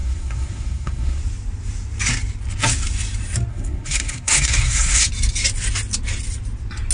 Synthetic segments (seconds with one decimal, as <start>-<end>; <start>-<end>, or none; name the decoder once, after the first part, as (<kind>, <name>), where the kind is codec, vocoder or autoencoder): 0.0-1.2 (codec, SNAC); 3.5-5.1